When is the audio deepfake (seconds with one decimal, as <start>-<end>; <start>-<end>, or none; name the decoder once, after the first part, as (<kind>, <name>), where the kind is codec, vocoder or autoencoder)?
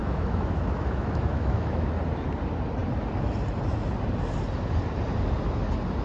0.0-1.9 (autoencoder, DAC-VAE)